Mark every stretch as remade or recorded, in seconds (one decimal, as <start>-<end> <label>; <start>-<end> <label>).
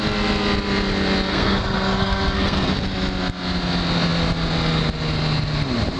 0.0-1.3 recorded; 1.3-2.7 remade; 2.7-6.0 recorded